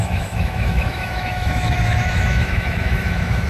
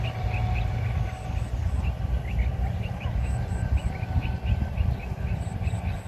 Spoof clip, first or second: first